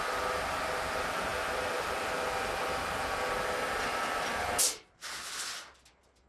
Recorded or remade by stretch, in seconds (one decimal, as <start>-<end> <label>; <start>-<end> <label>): 0.0-6.3 recorded